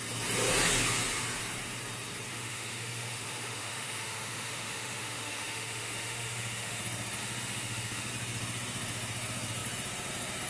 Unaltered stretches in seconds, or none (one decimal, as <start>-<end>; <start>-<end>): 0.0-2.3; 6.8-7.2; 8.1-10.5